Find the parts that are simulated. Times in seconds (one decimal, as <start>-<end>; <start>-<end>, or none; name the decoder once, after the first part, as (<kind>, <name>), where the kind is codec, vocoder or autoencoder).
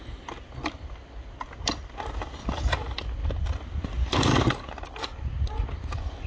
none